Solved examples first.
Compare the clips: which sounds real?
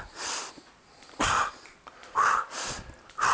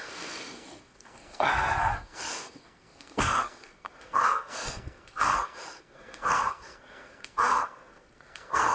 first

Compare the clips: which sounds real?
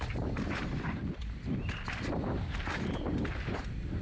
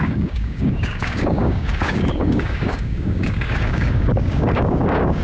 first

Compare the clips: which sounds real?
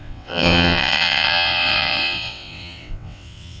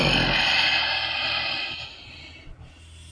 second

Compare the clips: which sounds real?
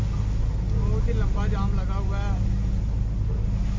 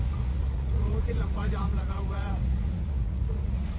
first